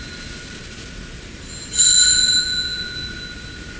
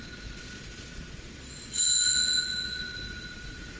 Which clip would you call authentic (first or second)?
first